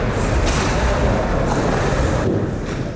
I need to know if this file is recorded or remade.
recorded